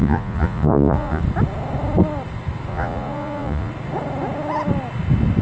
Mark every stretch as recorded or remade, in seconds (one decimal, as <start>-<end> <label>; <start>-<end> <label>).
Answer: 0.0-1.2 remade; 1.2-2.7 recorded; 2.7-3.7 remade; 3.7-5.4 recorded